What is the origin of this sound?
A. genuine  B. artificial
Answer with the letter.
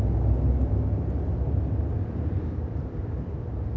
A